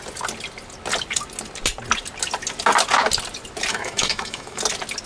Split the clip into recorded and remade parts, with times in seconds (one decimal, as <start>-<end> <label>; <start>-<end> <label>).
0.0-3.7 recorded; 3.7-4.6 remade; 4.6-5.1 recorded